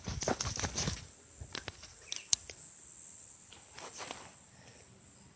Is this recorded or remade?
recorded